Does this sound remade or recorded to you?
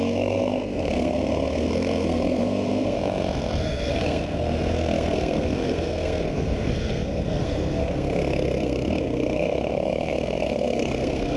remade